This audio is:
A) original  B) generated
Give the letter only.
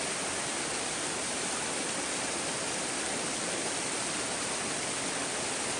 A